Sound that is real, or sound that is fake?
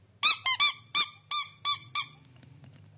real